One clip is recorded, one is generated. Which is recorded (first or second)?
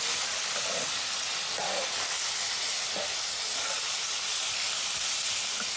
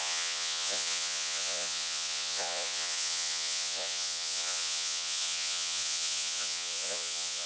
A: first